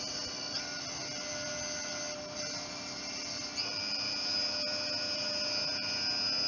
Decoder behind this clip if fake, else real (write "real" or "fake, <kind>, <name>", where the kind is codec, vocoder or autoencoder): real